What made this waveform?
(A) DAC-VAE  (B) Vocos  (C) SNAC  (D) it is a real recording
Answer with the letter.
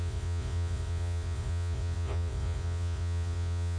B